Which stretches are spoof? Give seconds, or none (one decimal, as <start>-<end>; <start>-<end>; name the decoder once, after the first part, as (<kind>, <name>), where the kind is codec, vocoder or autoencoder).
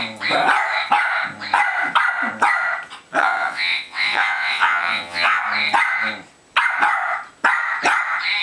3.2-5.4 (vocoder, WaveNeXt)